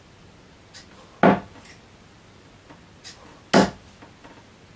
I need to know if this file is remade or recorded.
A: recorded